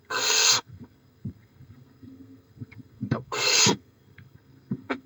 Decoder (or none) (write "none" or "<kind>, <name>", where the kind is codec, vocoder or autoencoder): codec, SNAC